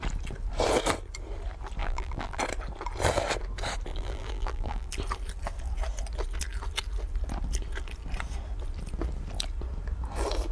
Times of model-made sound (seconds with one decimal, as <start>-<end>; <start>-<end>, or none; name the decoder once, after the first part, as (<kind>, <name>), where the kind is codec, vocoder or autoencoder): 1.8-2.4 (vocoder, BigVGAN v2); 3.9-4.9